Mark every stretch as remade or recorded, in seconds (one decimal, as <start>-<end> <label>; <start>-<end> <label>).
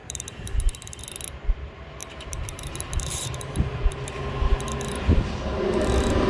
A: 0.0-1.0 remade; 1.0-2.0 recorded; 2.0-4.2 remade; 4.2-6.3 recorded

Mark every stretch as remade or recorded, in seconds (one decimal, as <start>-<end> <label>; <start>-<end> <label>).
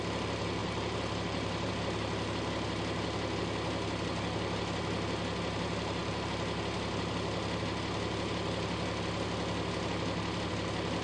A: 0.0-0.6 recorded; 0.6-1.7 remade; 1.7-11.0 recorded